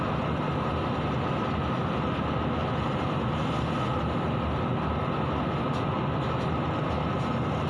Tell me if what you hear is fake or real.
real